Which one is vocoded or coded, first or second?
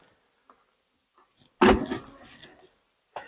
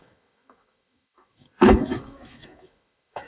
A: second